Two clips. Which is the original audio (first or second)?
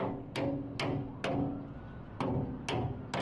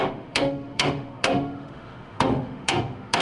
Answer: first